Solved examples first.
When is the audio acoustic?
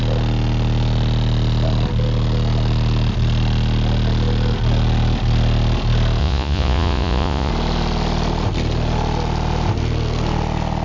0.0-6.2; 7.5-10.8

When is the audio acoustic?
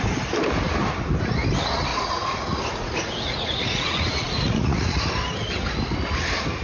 0.0-1.9; 5.0-6.6